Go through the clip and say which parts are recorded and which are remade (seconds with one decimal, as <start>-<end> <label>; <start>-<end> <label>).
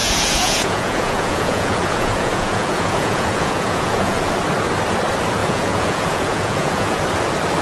0.0-4.3 remade; 4.3-5.4 recorded; 5.4-7.0 remade; 7.0-7.6 recorded